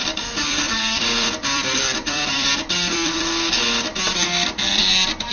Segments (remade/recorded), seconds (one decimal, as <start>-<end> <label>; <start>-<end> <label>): 0.0-3.2 remade; 3.2-5.3 recorded